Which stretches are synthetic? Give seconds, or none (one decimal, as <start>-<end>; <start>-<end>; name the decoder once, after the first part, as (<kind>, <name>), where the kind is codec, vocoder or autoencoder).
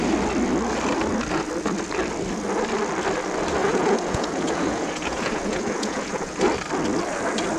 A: 3.6-6.4 (vocoder, Vocos)